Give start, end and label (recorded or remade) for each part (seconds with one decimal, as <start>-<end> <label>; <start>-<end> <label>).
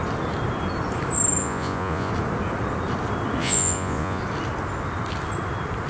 0.0-1.4 recorded; 1.4-2.1 remade; 2.1-3.4 recorded; 3.4-4.2 remade; 4.2-5.9 recorded